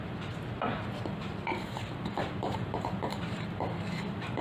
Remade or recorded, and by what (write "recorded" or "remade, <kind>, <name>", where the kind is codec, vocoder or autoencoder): remade, vocoder, BigVGAN v2